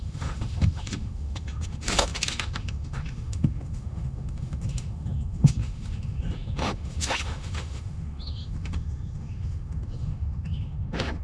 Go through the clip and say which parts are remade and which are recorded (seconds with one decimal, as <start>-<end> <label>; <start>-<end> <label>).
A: 0.0-11.2 remade